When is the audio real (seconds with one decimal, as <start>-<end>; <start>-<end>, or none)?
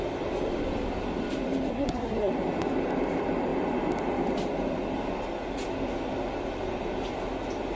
0.0-1.7; 2.3-7.8